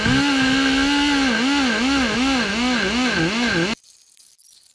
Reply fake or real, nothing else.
real